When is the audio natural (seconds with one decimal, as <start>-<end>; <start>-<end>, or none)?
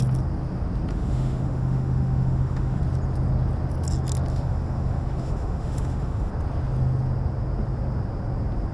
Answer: 0.0-0.9; 2.8-4.3; 6.3-8.7